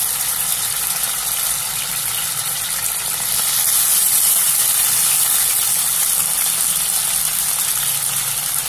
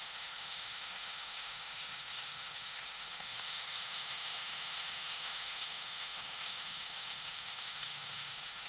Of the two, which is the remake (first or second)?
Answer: second